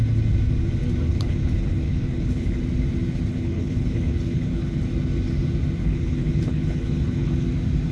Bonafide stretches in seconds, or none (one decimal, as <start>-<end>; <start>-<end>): 0.0-1.1; 2.6-3.3; 4.8-5.8; 7.3-7.9